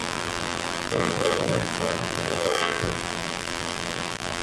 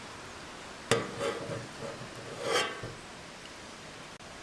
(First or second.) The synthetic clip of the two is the first